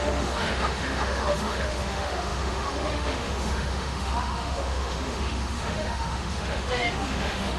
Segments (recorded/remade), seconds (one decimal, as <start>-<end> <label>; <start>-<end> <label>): 0.0-7.6 remade